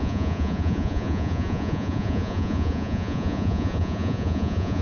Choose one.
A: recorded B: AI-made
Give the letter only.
B